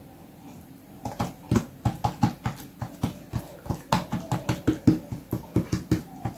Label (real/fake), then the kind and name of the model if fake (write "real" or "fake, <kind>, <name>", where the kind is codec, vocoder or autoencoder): real